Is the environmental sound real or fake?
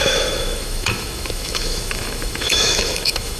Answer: fake